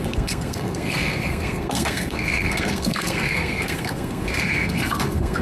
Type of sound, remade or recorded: remade